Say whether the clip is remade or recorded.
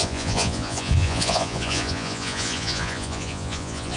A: remade